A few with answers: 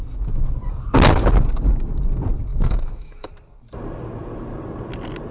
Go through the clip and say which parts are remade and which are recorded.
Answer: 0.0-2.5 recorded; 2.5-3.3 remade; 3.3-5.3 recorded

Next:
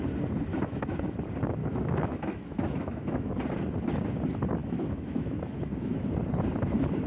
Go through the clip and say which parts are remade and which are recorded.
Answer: 0.0-0.5 recorded; 0.5-1.0 remade; 1.0-1.6 recorded; 1.6-3.3 remade; 3.3-4.6 recorded; 4.6-6.0 remade; 6.0-7.1 recorded

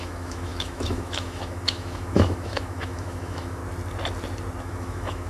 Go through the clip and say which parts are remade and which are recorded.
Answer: 0.0-3.6 remade; 3.6-4.6 recorded; 4.6-5.3 remade

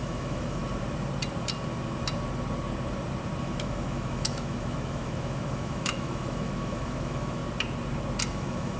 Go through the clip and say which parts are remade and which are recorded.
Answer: 0.0-0.6 remade; 0.6-3.4 recorded; 3.4-7.4 remade; 7.4-8.3 recorded; 8.3-8.8 remade

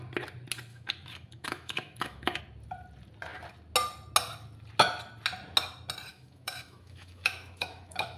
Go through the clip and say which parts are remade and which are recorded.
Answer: 0.0-0.7 recorded; 0.7-2.4 remade; 2.4-6.1 recorded; 6.1-8.2 remade